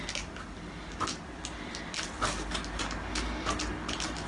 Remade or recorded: recorded